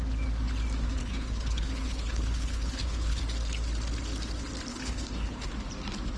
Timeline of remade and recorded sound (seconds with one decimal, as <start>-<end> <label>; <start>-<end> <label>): 0.0-1.0 recorded; 1.0-3.2 remade; 3.2-4.7 recorded; 4.7-5.5 remade; 5.5-6.2 recorded